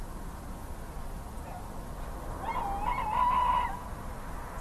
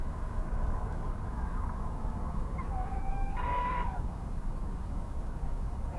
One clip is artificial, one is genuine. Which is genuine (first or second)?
first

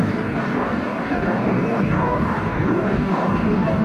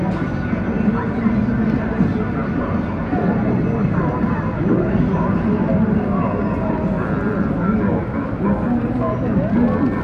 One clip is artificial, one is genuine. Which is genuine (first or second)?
second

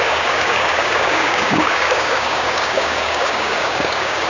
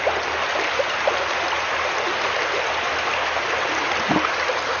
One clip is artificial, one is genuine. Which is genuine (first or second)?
second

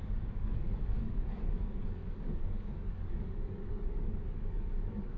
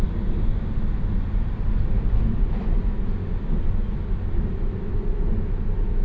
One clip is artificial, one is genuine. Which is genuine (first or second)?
second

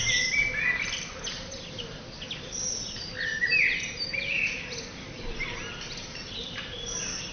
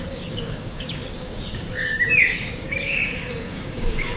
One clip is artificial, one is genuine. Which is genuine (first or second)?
first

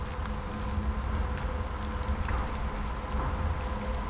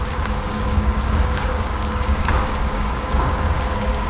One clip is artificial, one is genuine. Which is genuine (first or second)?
first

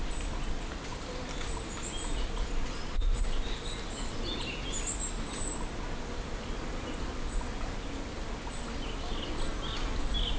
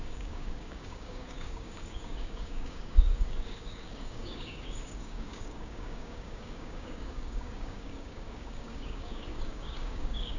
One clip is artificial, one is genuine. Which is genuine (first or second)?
first